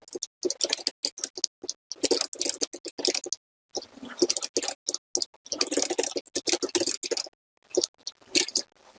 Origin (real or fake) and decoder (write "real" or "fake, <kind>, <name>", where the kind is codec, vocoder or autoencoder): real